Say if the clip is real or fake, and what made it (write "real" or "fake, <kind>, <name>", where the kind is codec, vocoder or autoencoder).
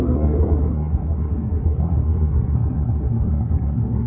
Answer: fake, codec, SNAC